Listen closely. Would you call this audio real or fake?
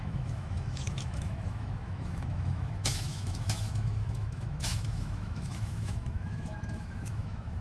fake